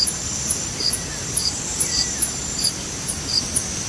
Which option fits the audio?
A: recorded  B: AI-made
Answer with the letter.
B